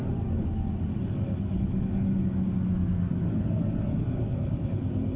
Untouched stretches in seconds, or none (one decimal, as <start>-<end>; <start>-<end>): 0.0-4.3